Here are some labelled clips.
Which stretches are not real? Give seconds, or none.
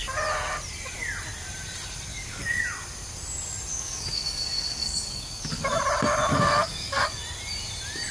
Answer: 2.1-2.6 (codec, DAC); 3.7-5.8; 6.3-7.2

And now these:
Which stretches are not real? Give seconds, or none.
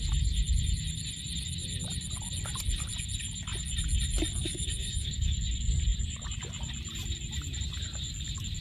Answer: 4.4-5.4 (codec, DAC)